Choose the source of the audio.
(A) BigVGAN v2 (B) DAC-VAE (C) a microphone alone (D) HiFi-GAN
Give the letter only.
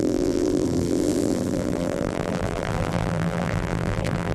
A